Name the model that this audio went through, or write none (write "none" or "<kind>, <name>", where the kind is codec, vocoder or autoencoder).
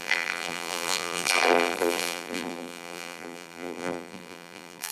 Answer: vocoder, BigVGAN v2